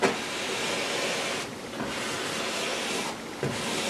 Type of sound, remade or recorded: recorded